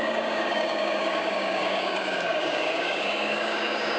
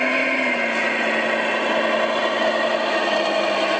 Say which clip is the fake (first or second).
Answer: first